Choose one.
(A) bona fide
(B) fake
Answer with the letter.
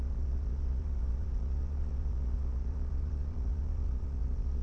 B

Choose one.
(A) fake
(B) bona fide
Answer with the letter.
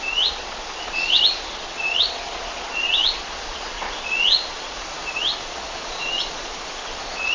A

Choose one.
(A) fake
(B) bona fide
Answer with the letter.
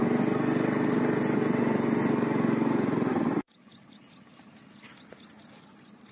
B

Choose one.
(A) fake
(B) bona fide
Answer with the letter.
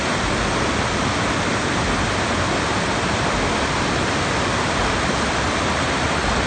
B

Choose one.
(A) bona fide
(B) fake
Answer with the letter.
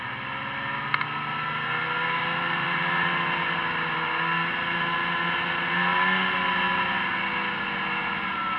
A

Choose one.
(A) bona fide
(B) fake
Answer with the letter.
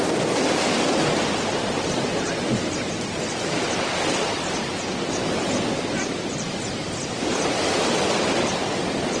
A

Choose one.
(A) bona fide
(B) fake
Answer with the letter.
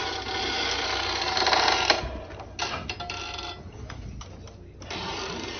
A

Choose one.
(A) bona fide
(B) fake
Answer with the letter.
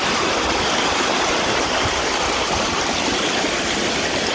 A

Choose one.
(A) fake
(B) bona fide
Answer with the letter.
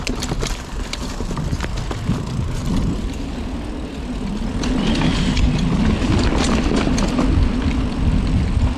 B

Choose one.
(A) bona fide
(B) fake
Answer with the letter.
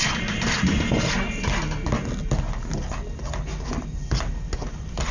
A